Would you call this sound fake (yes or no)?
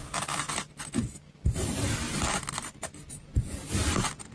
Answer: no